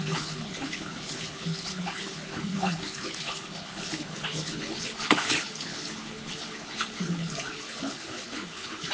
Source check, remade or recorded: remade